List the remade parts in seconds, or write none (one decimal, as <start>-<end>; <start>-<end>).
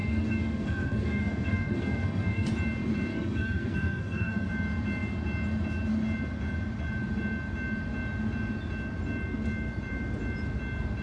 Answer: 0.0-2.5; 3.1-4.5